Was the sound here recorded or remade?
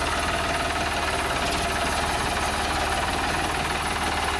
recorded